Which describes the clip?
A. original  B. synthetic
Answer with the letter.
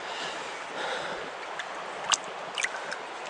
A